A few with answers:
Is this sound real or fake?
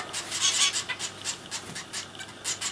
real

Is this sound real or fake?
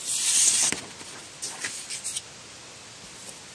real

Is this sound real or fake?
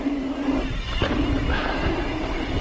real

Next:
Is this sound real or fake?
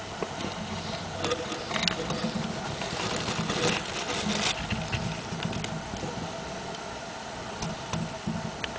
real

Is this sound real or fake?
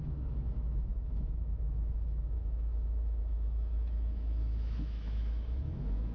fake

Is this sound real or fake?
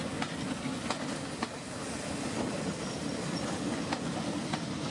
real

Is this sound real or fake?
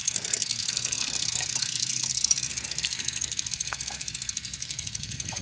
fake